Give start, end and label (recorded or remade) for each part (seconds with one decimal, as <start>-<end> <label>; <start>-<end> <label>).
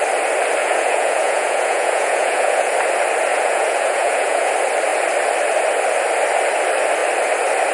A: 0.0-0.6 recorded; 0.6-2.7 remade; 2.7-3.3 recorded; 3.3-4.5 remade; 4.5-7.7 recorded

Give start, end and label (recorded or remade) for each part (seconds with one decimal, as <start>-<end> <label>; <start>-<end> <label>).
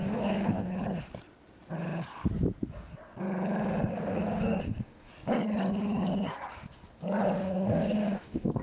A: 0.0-0.7 remade; 0.7-3.9 recorded; 3.9-5.1 remade; 5.1-7.4 recorded; 7.4-8.6 remade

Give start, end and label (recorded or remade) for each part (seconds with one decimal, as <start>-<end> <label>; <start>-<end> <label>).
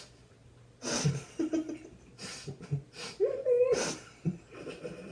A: 0.0-0.4 remade; 0.4-3.1 recorded; 3.1-5.1 remade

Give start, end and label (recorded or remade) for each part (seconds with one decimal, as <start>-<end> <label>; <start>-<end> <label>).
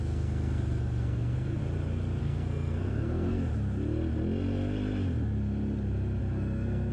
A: 0.0-1.6 remade; 1.6-2.2 recorded; 2.2-3.5 remade; 3.5-6.3 recorded; 6.3-6.9 remade